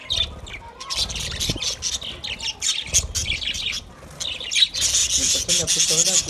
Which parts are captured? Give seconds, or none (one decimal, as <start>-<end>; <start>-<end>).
0.0-6.3